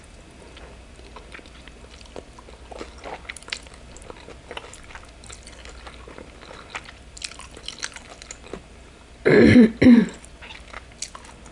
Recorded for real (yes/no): yes